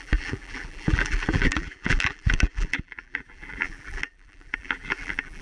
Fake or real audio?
fake